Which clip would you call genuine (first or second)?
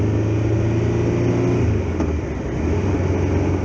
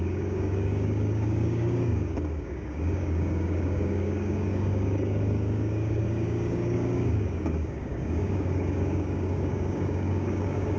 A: first